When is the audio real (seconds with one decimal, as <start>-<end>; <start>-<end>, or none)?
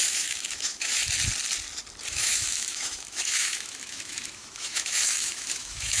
1.0-2.1